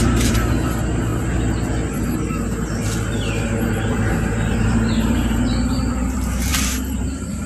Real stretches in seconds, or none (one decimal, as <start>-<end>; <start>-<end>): 1.1-4.6